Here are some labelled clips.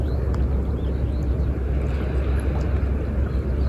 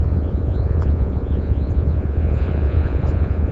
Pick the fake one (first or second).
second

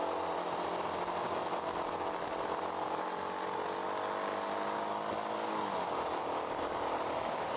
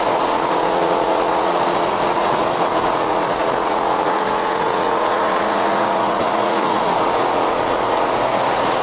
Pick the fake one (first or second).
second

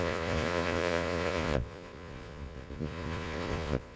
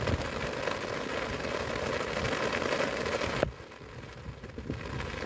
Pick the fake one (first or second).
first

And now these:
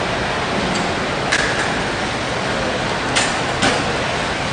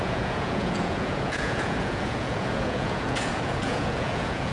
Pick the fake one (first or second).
second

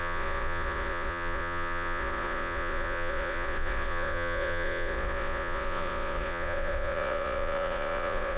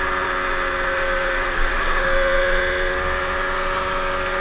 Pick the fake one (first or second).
first